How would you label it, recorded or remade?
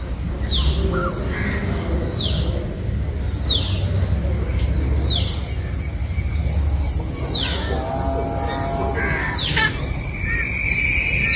recorded